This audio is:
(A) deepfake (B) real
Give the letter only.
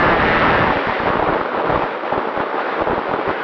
B